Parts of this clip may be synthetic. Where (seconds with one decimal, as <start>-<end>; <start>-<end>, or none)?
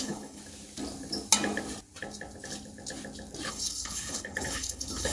0.0-0.4; 3.5-5.1